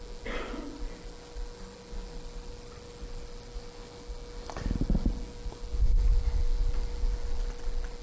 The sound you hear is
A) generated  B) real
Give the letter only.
B